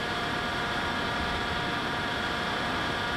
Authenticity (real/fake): fake